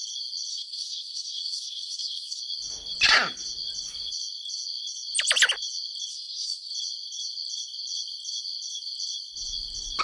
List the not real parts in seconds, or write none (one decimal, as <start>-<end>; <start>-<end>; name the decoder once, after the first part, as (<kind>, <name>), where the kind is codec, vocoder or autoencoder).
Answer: 0.5-2.4 (codec, SNAC); 6.1-6.7